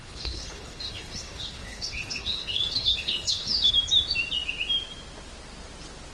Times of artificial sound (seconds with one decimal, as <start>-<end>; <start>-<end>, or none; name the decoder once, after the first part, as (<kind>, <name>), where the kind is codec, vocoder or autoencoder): 0.0-3.7 (codec, HILCodec)